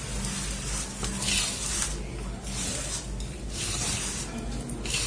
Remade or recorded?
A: recorded